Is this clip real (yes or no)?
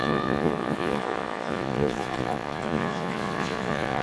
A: no